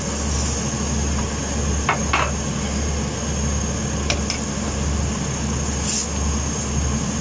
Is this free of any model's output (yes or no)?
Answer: yes